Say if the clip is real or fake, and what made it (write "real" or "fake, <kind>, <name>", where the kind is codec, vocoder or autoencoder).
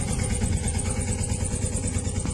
fake, vocoder, Vocos